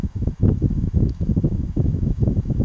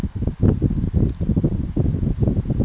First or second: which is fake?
first